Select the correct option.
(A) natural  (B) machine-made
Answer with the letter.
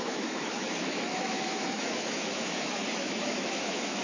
B